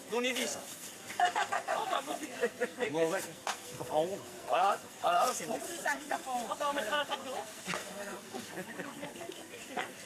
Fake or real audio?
fake